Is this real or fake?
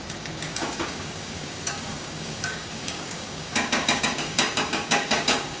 fake